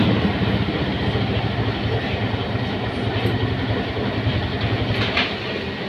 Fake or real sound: real